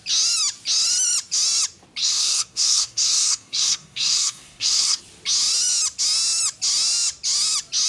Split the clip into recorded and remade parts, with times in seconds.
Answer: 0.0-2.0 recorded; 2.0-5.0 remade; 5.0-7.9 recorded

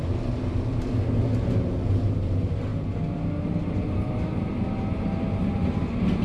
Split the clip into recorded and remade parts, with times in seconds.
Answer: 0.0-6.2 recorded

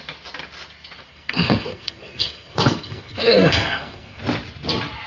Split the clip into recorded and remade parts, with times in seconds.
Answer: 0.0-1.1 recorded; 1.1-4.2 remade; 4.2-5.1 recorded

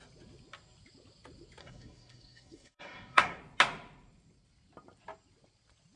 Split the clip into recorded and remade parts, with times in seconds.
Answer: 0.0-1.6 recorded; 1.6-3.4 remade; 3.4-6.0 recorded

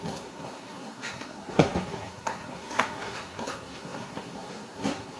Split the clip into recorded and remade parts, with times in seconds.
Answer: 0.0-5.2 remade

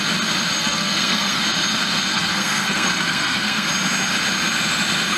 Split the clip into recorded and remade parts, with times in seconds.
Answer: 0.0-0.6 recorded; 0.6-1.4 remade; 1.4-2.1 recorded; 2.1-3.7 remade; 3.7-5.2 recorded

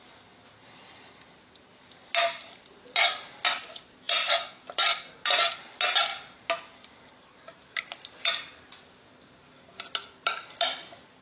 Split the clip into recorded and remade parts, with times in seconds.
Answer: 0.0-11.2 recorded